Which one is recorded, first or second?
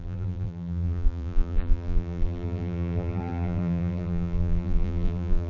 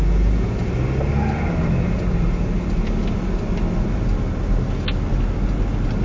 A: second